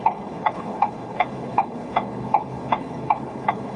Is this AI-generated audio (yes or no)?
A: yes